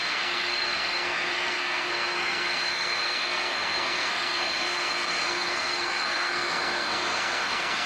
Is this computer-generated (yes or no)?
yes